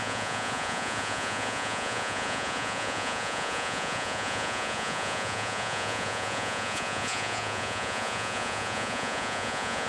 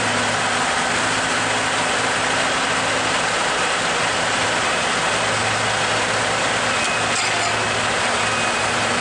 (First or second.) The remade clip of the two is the first